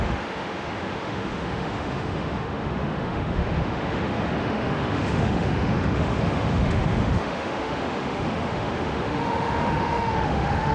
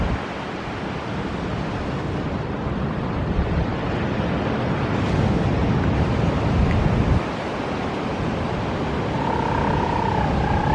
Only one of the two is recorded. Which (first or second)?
second